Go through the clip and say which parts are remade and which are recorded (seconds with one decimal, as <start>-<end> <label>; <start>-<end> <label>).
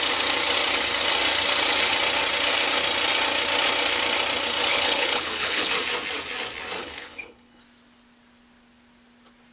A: 0.0-4.7 recorded; 4.7-5.7 remade; 5.7-6.8 recorded; 6.8-7.6 remade; 7.6-9.5 recorded